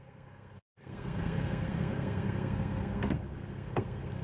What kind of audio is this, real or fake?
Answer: fake